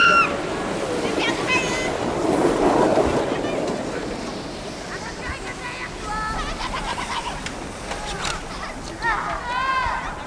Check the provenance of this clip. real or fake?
real